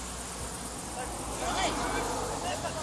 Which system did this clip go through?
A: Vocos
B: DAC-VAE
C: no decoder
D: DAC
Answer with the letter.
C